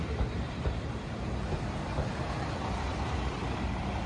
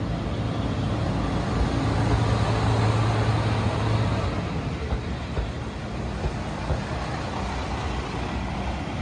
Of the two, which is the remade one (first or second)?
first